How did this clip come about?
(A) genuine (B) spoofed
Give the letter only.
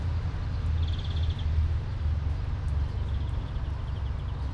A